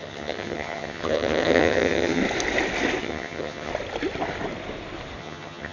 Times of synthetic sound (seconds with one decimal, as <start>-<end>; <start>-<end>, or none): 0.0-2.2; 3.0-3.7; 5.2-5.7